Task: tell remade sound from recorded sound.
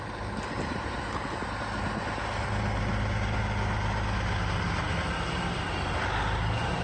recorded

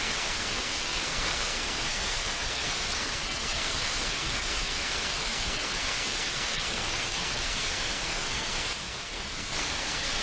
remade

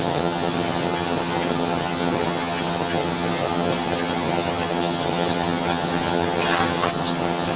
remade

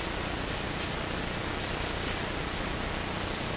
recorded